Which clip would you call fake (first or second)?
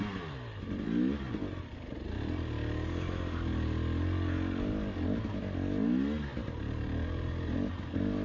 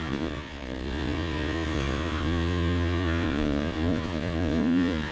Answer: second